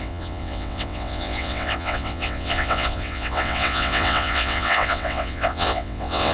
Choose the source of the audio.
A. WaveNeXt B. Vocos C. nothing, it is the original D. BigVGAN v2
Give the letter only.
A